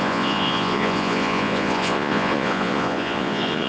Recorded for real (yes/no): no